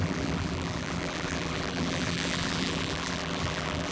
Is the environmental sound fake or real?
fake